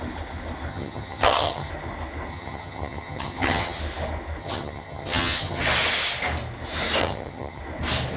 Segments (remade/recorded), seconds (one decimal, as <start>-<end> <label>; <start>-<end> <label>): 0.0-0.7 recorded; 0.7-1.7 remade; 1.7-2.3 recorded; 2.3-3.8 remade; 3.8-4.4 recorded; 4.4-5.6 remade; 5.6-7.0 recorded; 7.0-7.6 remade; 7.6-8.2 recorded